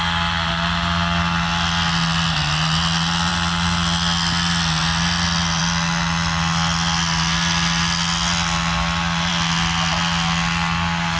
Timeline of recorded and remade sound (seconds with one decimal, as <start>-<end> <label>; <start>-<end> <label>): 0.0-11.2 recorded

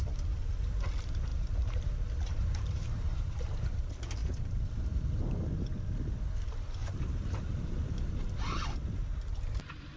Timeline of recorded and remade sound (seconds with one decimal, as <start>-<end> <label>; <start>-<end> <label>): 0.0-1.3 recorded; 1.3-3.7 remade; 3.7-4.2 recorded; 4.2-5.2 remade; 5.2-6.8 recorded; 6.8-8.1 remade; 8.1-9.0 recorded; 9.0-9.6 remade; 9.6-10.0 recorded

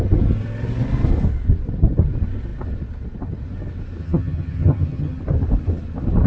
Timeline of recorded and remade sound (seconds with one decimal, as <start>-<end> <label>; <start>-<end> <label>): 0.0-4.0 recorded; 4.0-5.2 remade; 5.2-6.3 recorded

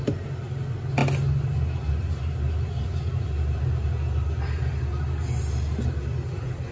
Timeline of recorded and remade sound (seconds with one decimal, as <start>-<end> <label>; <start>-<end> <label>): 0.0-6.7 recorded

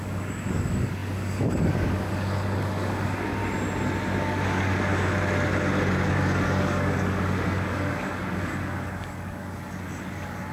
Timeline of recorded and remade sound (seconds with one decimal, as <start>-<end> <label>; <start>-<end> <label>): 0.0-3.4 remade; 3.4-4.2 recorded; 4.2-4.9 remade; 4.9-6.1 recorded; 6.1-10.5 remade

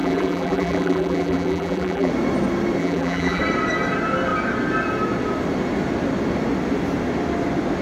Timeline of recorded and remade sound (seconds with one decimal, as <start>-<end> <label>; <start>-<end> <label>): 0.0-2.1 remade; 2.1-2.8 recorded; 2.8-3.4 remade; 3.4-7.8 recorded

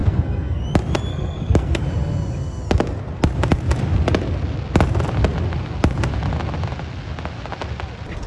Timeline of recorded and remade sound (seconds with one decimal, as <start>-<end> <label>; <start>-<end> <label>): 0.0-0.6 remade; 0.6-1.1 recorded; 1.1-1.8 remade; 1.8-8.3 recorded

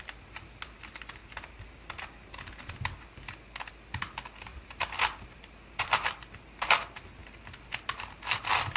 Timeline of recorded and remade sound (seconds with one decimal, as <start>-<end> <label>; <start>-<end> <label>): 0.0-4.5 recorded; 4.5-5.6 remade; 5.6-7.2 recorded; 7.2-8.2 remade; 8.2-8.8 recorded